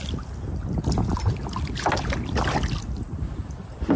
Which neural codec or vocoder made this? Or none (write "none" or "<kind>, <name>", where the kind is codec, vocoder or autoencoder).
none